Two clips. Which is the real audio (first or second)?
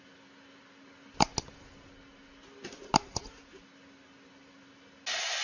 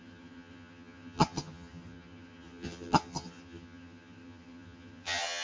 first